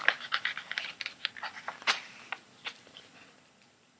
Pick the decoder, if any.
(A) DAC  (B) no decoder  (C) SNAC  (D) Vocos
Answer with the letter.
B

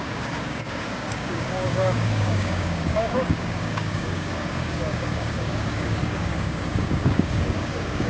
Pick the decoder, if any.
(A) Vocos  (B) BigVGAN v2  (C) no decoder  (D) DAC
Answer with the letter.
D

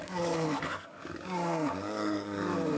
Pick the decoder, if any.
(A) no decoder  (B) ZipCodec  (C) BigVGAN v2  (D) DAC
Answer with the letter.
D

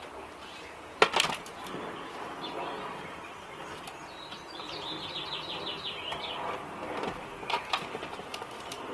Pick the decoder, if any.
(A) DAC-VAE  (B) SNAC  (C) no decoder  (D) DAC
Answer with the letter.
C